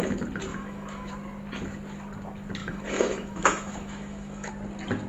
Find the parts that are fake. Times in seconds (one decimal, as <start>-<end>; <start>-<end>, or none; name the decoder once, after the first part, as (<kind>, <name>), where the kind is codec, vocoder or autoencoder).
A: 0.5-1.1 (autoencoder, DAC-VAE); 2.6-4.5